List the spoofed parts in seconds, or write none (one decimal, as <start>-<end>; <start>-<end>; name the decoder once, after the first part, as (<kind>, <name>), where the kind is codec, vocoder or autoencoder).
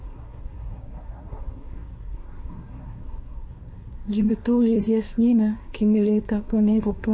0.0-7.1 (codec, SNAC)